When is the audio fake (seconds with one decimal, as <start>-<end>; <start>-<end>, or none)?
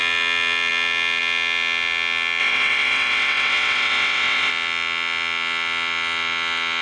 2.4-4.5